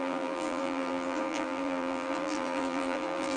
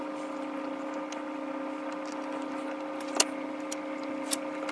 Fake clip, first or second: first